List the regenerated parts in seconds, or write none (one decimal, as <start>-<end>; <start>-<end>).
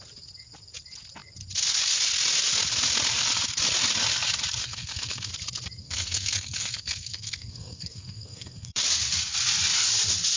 4.6-5.3; 5.8-8.8